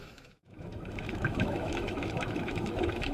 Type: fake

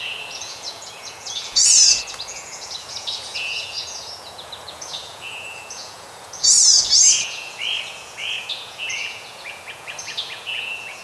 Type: fake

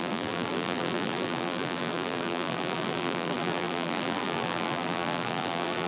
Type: fake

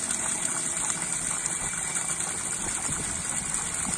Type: real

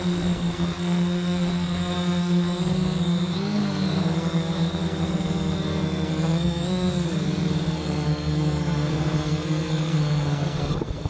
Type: fake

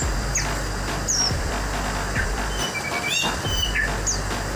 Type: real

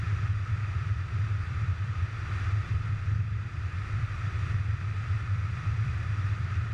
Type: fake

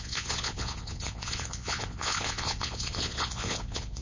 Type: fake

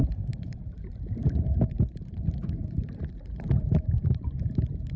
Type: fake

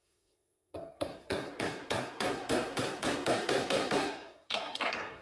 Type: fake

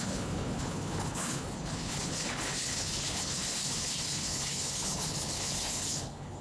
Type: fake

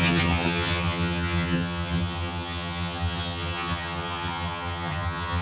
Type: fake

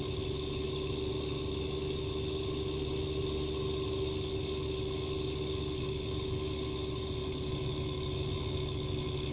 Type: real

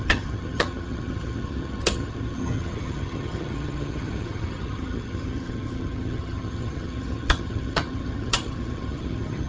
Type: fake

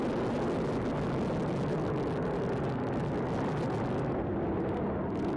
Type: real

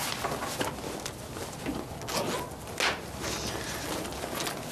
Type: real